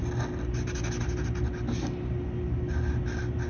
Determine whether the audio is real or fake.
real